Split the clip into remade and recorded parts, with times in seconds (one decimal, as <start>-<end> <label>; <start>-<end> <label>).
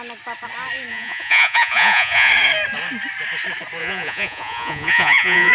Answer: 0.0-0.9 recorded; 0.9-2.3 remade; 2.3-3.8 recorded; 3.8-5.5 remade